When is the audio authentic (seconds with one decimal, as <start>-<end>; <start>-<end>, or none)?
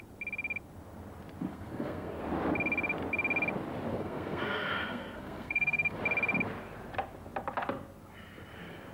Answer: 0.0-1.5; 2.2-3.9; 6.0-8.9